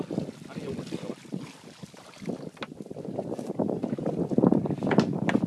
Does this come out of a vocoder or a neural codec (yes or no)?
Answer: no